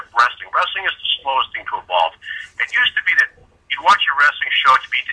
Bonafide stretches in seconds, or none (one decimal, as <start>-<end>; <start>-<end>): 0.0-5.1